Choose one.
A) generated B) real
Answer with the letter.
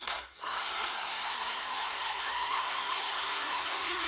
A